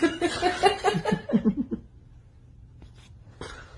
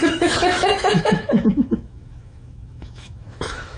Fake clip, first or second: second